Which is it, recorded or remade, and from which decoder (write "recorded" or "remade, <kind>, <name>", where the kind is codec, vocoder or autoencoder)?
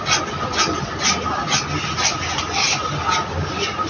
recorded